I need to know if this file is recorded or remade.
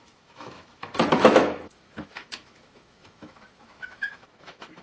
remade